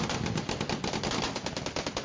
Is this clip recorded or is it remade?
recorded